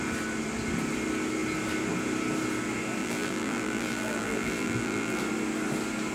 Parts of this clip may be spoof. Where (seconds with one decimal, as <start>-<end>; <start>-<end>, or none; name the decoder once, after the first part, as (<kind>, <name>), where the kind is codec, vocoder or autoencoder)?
3.0-5.2 (vocoder, BigVGAN v2)